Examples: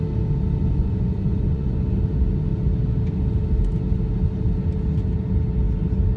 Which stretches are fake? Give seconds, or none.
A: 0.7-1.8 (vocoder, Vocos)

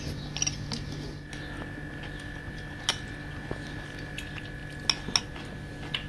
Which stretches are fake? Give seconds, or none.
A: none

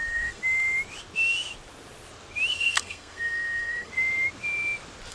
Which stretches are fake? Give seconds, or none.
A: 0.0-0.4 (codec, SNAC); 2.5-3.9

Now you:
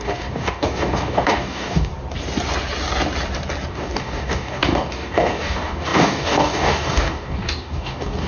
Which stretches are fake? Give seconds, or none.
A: 0.0-1.9 (codec, DAC); 3.7-8.3

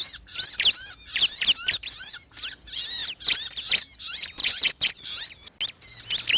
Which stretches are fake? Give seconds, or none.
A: 4.4-5.1 (vocoder, Vocos)

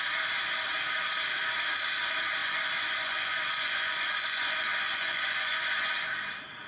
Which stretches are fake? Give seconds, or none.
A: 2.4-6.1 (vocoder, Vocos)